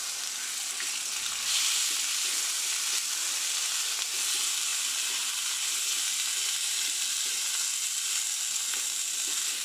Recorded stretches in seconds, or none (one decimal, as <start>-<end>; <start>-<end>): 0.0-9.6

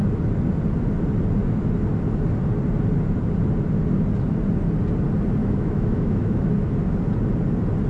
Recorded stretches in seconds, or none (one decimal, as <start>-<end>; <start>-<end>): 0.0-5.4; 6.5-7.9

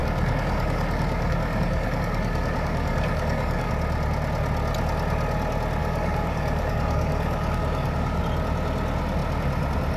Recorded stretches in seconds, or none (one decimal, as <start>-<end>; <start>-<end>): 3.7-5.8; 8.2-10.0

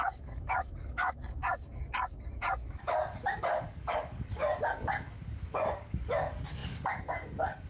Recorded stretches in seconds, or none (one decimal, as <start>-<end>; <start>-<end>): none

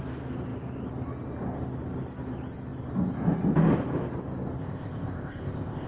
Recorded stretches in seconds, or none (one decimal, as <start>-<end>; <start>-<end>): 0.0-4.6

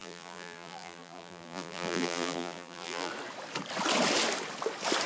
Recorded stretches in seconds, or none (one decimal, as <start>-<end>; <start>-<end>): 3.1-5.1

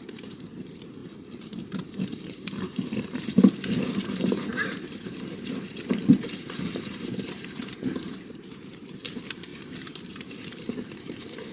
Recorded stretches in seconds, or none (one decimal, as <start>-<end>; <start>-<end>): none

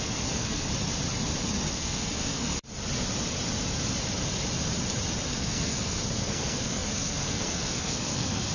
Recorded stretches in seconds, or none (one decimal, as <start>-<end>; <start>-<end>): 0.7-1.7; 2.5-5.3